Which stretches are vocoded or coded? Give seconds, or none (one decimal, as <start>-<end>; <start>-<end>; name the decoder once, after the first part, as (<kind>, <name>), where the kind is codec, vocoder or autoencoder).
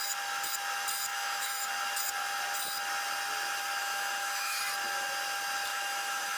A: 1.1-1.7 (autoencoder, DAC-VAE); 3.8-4.6; 5.7-6.4